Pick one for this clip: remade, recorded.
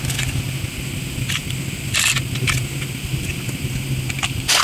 recorded